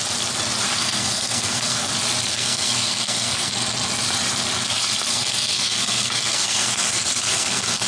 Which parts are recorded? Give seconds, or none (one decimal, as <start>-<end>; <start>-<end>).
0.0-0.8; 1.9-2.3; 3.5-5.1